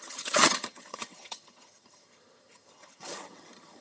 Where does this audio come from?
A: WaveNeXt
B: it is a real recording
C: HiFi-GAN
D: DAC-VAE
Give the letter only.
C